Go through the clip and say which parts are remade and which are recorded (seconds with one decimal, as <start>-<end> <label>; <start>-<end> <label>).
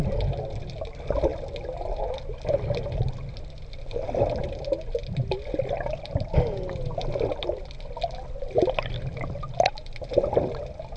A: 0.0-11.0 recorded